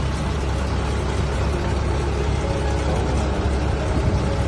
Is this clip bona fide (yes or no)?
yes